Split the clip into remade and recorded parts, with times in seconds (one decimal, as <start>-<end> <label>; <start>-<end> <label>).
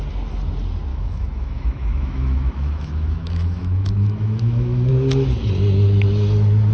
0.0-0.9 recorded; 0.9-4.9 remade; 4.9-6.7 recorded